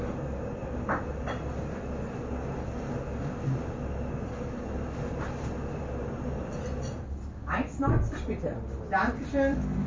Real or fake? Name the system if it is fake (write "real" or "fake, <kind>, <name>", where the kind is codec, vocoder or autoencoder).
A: real